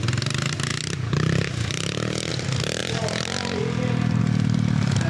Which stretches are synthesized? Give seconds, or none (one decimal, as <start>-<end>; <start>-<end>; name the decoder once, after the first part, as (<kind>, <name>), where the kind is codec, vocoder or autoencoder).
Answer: none